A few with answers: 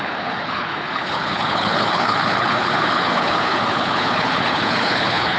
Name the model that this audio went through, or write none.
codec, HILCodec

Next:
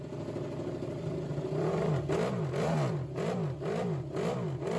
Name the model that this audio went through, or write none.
none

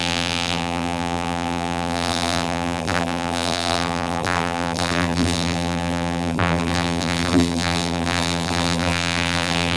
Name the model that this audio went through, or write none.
vocoder, BigVGAN v2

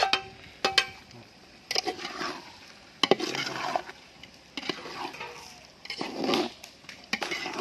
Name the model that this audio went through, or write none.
none